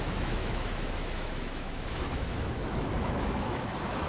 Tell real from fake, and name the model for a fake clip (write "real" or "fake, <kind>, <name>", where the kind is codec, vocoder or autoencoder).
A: fake, autoencoder, DAC-VAE